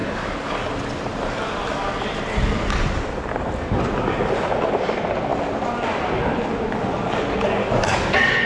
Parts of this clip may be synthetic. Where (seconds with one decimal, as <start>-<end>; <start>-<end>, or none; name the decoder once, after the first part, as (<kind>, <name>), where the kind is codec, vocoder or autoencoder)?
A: 0.0-0.7 (codec, DAC); 7.6-8.5